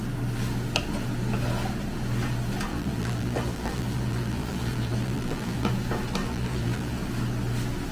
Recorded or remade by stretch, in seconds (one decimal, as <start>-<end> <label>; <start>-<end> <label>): 0.0-2.7 recorded; 2.7-5.7 remade; 5.7-6.2 recorded; 6.2-7.0 remade; 7.0-7.9 recorded